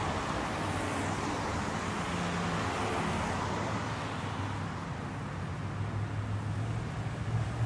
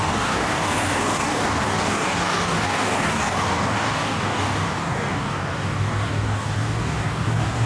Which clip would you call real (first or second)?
first